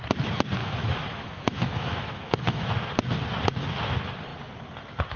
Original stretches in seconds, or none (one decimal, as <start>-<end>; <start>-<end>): 0.0-0.6; 2.7-5.2